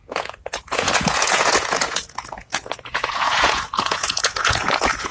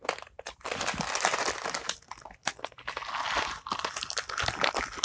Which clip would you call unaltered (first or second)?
second